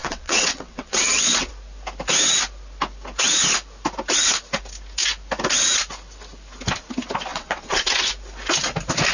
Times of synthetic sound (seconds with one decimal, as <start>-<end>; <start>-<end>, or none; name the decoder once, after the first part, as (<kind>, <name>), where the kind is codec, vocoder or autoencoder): 0.0-1.5 (vocoder, WaveNeXt); 7.3-8.1